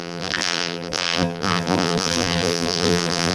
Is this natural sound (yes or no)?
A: no